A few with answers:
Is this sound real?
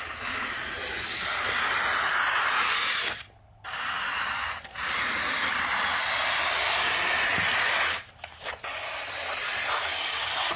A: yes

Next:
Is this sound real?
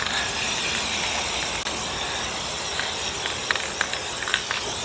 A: yes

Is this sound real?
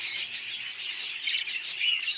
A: yes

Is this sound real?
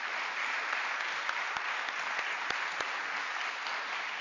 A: yes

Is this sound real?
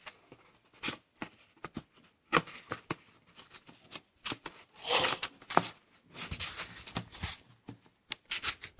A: yes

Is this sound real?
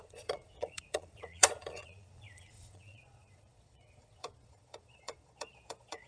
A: no